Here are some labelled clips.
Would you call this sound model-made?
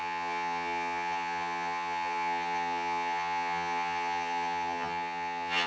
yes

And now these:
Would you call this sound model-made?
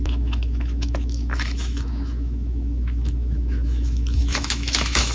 yes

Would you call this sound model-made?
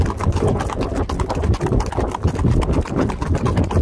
no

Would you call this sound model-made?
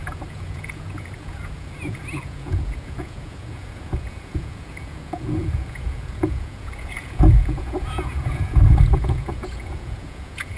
yes